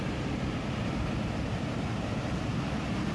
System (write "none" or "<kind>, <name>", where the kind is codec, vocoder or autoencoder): none